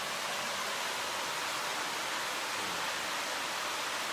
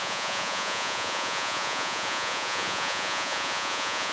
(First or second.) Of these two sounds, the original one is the first